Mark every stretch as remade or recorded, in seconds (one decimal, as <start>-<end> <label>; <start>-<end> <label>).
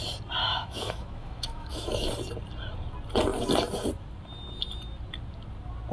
0.0-0.4 recorded; 0.4-2.1 remade; 2.1-5.9 recorded